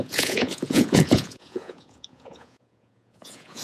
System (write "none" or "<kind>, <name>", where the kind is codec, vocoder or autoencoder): vocoder, Vocos